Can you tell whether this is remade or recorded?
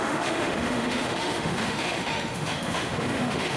remade